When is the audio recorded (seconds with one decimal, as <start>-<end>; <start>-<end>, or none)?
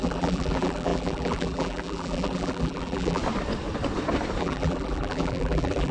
3.2-4.4